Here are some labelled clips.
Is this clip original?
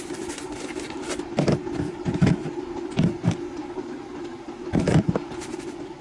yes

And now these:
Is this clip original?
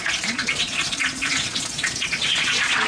no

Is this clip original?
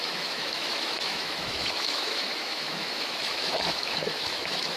no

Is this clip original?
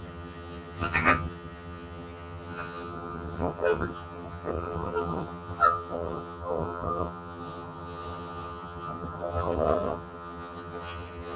no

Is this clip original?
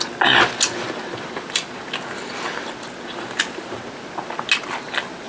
yes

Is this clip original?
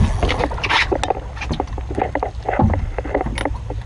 yes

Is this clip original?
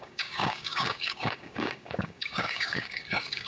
no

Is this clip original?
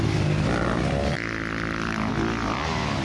yes